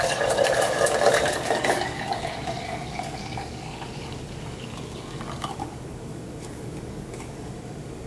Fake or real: fake